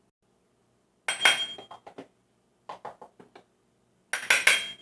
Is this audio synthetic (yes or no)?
no